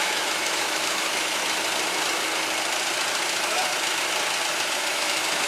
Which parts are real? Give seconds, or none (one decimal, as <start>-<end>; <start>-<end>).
1.4-4.7